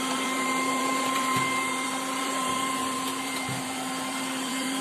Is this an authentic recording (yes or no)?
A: no